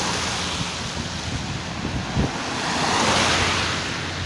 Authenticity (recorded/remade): recorded